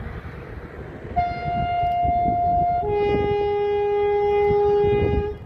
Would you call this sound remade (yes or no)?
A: no